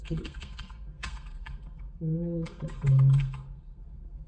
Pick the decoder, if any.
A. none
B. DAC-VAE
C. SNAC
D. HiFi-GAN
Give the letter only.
C